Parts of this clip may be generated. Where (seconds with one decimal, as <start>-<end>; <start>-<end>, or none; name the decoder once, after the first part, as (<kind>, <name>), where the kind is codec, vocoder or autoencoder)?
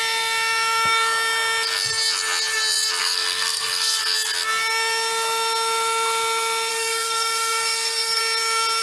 3.0-4.0 (codec, SNAC); 6.7-8.2